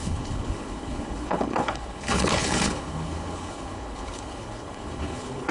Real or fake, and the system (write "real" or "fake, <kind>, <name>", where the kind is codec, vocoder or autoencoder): fake, codec, HILCodec